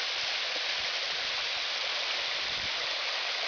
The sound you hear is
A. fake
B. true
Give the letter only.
B